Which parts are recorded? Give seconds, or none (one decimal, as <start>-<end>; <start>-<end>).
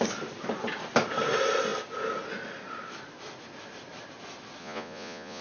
0.0-4.6